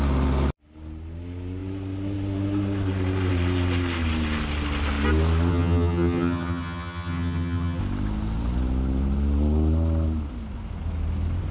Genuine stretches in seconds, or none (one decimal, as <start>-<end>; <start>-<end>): 0.0-5.5; 7.8-11.5